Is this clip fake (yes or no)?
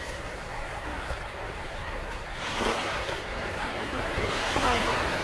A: yes